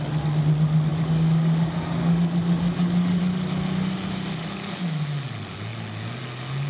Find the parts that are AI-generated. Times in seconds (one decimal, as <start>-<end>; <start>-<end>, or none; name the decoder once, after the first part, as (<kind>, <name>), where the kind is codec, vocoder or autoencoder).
0.9-3.2 (codec, DAC)